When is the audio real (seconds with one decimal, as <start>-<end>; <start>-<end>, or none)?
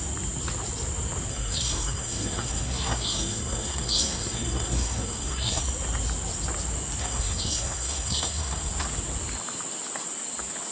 0.0-1.3; 5.6-7.0; 8.7-10.7